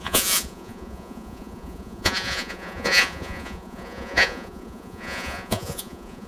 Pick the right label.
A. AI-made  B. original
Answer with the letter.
A